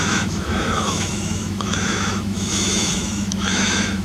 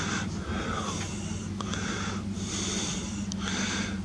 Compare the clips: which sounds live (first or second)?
second